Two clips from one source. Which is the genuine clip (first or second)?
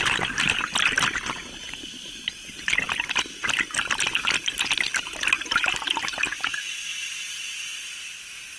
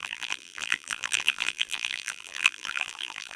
first